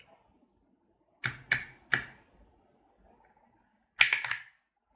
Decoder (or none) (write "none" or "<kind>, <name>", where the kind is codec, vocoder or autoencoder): none